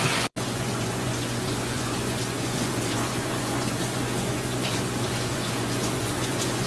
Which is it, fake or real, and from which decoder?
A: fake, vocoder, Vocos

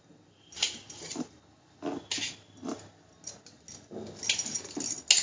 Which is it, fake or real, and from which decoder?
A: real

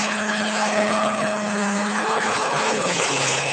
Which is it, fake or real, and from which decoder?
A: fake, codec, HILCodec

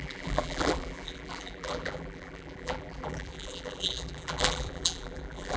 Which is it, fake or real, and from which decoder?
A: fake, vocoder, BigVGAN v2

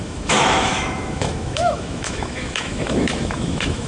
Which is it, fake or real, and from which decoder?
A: fake, autoencoder, DAC-VAE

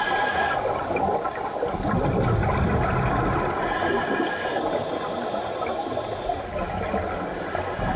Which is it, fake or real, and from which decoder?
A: real